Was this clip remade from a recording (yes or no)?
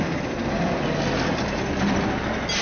no